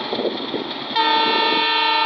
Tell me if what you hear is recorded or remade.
recorded